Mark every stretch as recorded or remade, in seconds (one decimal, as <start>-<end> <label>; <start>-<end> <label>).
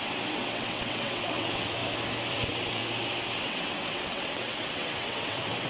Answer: 0.0-1.8 remade; 1.8-2.3 recorded; 2.3-2.8 remade; 2.8-3.4 recorded; 3.4-5.7 remade